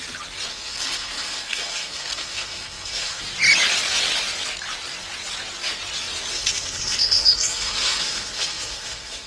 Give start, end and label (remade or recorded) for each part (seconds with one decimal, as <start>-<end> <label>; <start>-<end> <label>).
0.0-0.5 recorded; 0.5-3.2 remade; 3.2-6.3 recorded; 6.3-9.3 remade